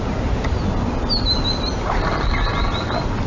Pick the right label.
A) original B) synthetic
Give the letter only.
A